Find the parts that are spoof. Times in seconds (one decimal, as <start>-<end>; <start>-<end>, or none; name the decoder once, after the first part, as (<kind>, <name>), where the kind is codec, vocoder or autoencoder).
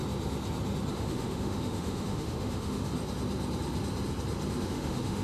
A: 0.9-2.9 (autoencoder, DAC-VAE); 4.6-5.2